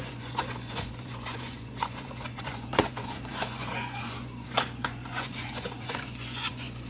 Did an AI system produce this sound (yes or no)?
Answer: yes